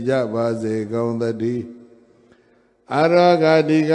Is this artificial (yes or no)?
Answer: no